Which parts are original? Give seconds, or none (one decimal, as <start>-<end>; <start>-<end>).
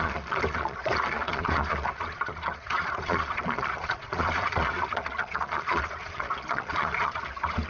none